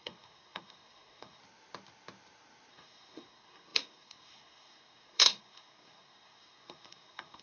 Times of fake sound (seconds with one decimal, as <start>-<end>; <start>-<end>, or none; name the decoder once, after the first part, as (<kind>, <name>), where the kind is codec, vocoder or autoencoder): 0.0-1.4 (codec, SNAC); 2.7-7.4